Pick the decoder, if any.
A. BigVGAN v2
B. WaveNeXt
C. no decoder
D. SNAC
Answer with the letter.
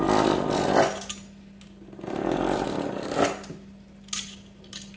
C